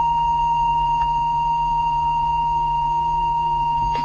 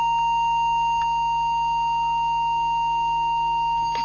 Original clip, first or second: second